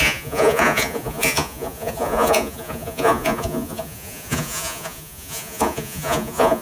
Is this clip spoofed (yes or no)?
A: yes